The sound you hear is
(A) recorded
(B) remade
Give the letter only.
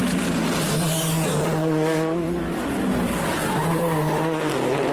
A